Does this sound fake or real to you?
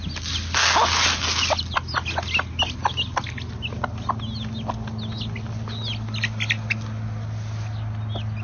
real